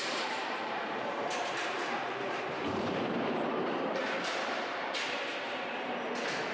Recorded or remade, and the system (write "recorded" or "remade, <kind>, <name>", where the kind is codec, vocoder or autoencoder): remade, vocoder, BigVGAN v2